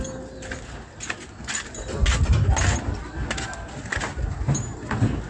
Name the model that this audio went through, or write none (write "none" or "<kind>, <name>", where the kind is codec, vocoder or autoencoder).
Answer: none